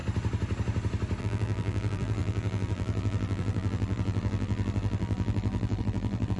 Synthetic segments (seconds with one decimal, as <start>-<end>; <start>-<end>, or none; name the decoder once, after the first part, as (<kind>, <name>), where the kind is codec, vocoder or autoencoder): 1.2-6.4 (vocoder, BigVGAN v2)